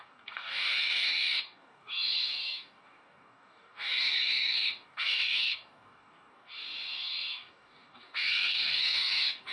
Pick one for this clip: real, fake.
fake